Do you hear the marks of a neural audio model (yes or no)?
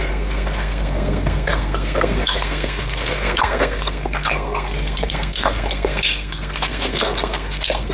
yes